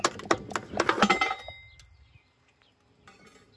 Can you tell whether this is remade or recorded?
recorded